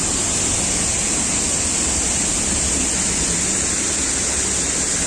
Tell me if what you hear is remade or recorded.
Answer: recorded